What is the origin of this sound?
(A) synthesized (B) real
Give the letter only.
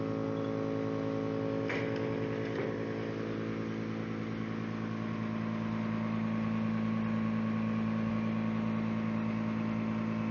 B